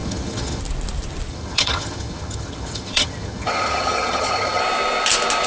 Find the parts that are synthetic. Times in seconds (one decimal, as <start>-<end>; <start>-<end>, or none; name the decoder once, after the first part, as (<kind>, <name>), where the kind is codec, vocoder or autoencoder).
0.0-0.6 (vocoder, HiFi-GAN); 1.3-4.6